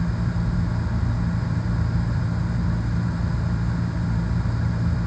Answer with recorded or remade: recorded